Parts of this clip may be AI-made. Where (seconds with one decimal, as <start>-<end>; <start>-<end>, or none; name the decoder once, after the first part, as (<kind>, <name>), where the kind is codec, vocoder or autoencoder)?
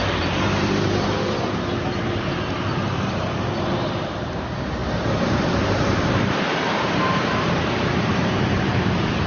0.0-9.3 (vocoder, BigVGAN v2)